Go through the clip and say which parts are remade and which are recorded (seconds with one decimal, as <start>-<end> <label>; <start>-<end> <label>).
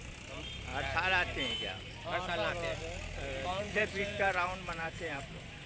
0.0-3.5 recorded; 3.5-5.2 remade; 5.2-5.7 recorded